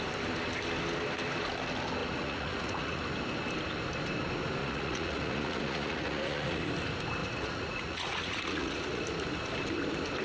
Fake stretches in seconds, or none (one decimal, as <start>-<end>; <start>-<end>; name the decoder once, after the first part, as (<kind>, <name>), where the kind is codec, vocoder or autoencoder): 2.0-3.0 (vocoder, Vocos); 4.6-6.6; 7.2-9.0